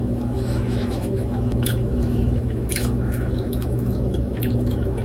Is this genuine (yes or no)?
no